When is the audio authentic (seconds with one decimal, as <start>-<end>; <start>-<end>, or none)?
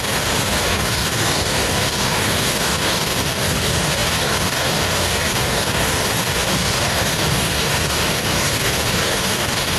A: none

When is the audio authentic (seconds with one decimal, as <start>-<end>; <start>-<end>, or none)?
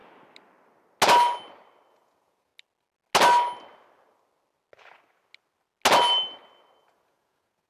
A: 0.0-1.9; 2.5-6.8